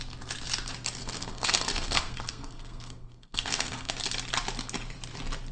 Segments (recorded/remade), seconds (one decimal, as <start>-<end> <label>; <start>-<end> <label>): 0.0-1.0 recorded; 1.0-3.9 remade; 3.9-5.5 recorded